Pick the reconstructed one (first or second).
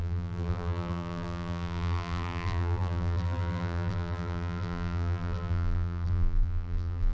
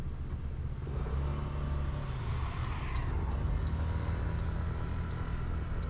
first